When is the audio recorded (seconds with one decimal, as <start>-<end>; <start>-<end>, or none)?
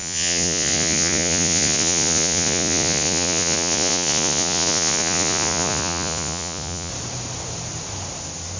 6.9-8.6